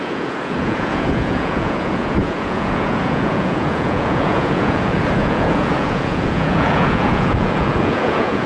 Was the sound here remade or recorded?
remade